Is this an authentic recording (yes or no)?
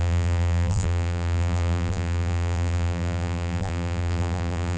no